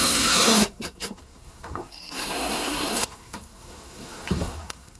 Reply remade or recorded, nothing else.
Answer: remade